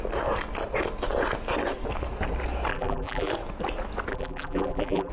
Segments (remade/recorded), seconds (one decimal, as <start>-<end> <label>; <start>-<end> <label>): 0.0-2.7 recorded; 2.7-3.3 remade; 3.3-4.1 recorded; 4.1-5.1 remade